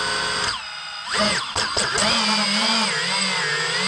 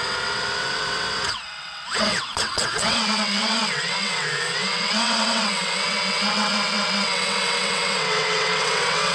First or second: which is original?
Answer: first